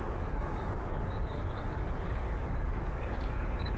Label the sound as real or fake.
fake